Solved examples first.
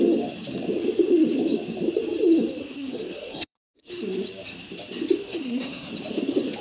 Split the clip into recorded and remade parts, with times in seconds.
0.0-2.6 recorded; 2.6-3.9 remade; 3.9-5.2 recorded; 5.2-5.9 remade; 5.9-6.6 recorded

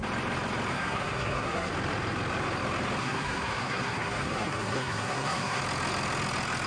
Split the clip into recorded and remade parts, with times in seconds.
0.0-0.7 recorded; 0.7-1.7 remade; 1.7-3.0 recorded; 3.0-5.6 remade; 5.6-6.7 recorded

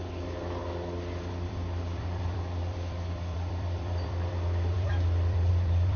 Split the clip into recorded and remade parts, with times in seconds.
0.0-0.6 remade; 0.6-1.3 recorded; 1.3-6.0 remade